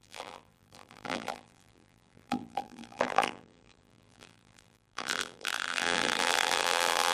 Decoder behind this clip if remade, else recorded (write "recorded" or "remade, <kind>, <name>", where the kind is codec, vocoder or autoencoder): remade, vocoder, BigVGAN v2